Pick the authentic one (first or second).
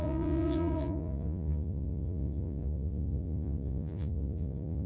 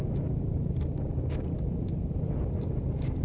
second